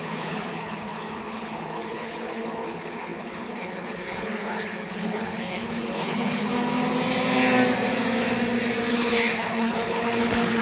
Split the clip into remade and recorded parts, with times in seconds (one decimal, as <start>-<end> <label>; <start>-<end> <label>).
0.0-6.5 remade; 6.5-8.9 recorded; 8.9-10.6 remade